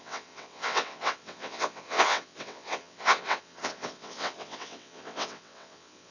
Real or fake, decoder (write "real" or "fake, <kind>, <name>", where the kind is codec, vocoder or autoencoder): fake, vocoder, WaveNeXt